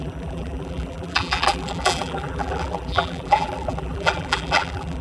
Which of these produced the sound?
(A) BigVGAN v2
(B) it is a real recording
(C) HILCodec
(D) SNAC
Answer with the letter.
A